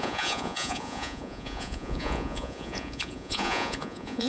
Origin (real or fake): fake